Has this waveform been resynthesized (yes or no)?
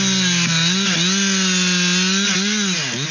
no